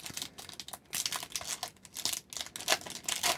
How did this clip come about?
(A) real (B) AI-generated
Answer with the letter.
A